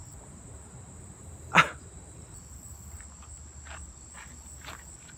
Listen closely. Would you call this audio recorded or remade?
recorded